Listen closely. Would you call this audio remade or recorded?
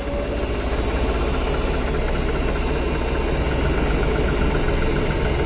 recorded